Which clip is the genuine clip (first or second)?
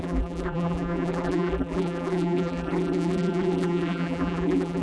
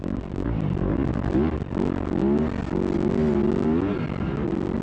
second